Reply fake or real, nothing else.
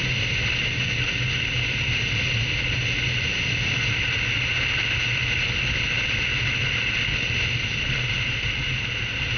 real